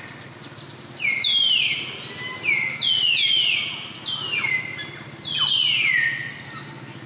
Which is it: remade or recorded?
recorded